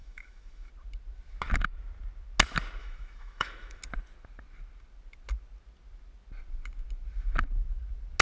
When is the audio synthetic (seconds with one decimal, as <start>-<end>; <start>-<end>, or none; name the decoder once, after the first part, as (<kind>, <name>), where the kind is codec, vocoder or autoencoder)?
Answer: 0.0-0.7 (autoencoder, DAC-VAE); 2.8-3.8